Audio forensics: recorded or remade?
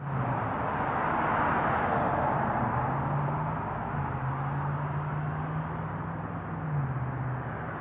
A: recorded